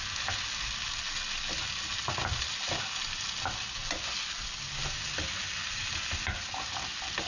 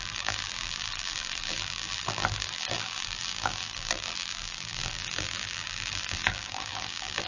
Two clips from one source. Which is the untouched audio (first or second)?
first